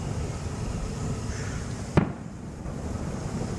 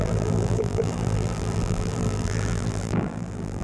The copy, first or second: second